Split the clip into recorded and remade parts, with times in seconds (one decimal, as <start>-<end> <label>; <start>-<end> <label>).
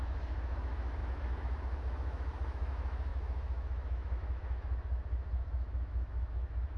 0.0-6.8 remade